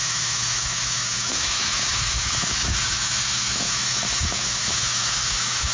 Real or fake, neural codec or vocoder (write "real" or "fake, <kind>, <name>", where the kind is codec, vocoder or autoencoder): fake, autoencoder, DAC-VAE